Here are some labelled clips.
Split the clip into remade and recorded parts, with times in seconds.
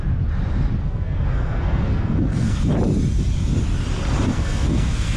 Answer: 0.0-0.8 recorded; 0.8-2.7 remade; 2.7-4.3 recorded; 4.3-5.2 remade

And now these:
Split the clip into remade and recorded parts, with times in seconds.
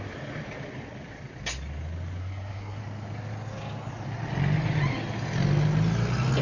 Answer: 0.0-2.2 recorded; 2.2-2.8 remade; 2.8-6.4 recorded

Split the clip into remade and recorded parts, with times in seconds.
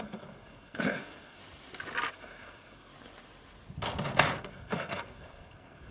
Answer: 0.0-1.4 remade; 1.4-2.1 recorded; 2.1-2.9 remade; 2.9-4.4 recorded; 4.4-5.9 remade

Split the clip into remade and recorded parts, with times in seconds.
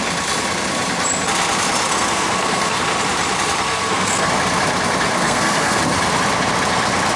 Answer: 0.0-1.9 recorded; 1.9-2.8 remade; 2.8-3.7 recorded; 3.7-4.3 remade; 4.3-5.2 recorded; 5.2-5.8 remade; 5.8-7.2 recorded